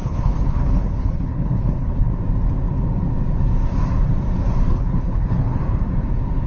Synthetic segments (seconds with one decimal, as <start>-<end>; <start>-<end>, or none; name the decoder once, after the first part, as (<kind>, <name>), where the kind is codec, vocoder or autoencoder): 0.0-2.1 (codec, HILCodec); 4.7-5.6